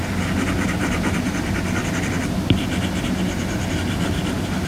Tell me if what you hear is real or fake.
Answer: real